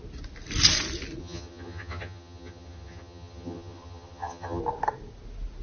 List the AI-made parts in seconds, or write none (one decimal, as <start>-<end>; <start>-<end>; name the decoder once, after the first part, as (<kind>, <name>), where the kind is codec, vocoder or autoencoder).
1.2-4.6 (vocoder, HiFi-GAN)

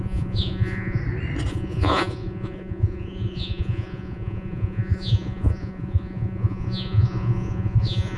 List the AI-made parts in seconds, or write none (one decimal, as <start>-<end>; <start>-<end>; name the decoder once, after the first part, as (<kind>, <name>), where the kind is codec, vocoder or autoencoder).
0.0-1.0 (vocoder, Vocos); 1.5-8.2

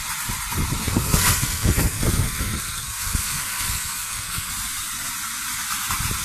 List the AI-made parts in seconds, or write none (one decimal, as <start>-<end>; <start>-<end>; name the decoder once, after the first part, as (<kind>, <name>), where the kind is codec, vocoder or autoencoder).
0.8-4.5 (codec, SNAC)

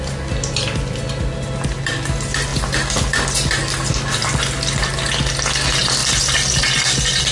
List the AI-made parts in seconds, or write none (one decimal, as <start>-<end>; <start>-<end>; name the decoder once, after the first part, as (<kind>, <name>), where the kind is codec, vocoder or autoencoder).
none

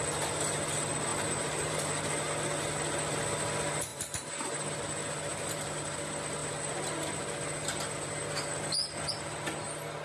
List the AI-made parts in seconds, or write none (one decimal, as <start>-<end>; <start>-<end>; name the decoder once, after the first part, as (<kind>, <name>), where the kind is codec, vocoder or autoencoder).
1.1-1.8 (vocoder, BigVGAN v2); 3.9-4.8; 5.3-6.0

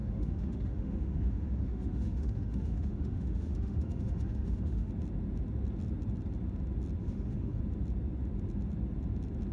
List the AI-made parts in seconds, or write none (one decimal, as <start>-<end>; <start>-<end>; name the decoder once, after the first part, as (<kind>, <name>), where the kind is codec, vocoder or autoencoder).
0.0-4.9 (autoencoder, DAC-VAE); 7.0-7.6

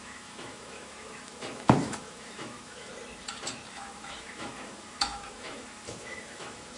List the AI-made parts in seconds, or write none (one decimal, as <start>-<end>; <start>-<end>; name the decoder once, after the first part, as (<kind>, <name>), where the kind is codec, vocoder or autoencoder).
0.0-2.9 (autoencoder, DAC-VAE); 3.7-6.8

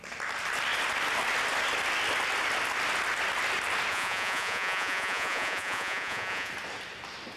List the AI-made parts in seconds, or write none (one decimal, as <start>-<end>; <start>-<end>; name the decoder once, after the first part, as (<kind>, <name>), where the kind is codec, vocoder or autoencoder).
3.9-6.5 (vocoder, Vocos)